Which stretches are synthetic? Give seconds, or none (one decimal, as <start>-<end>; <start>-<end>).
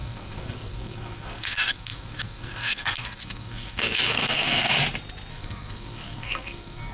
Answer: 0.0-4.7; 5.3-6.9